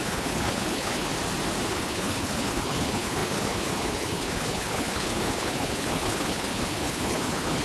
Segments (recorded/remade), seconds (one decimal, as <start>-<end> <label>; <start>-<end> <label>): 0.0-1.1 remade; 1.1-1.7 recorded; 1.7-7.6 remade